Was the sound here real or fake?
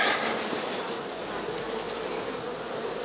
real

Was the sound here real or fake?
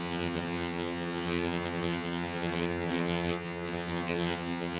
fake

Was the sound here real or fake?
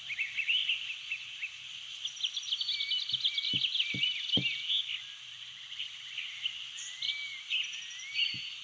real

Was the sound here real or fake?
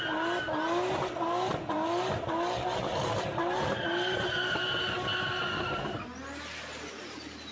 real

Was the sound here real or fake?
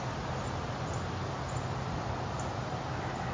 real